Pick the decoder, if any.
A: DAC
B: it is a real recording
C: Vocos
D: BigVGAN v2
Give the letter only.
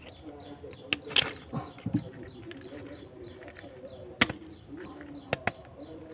B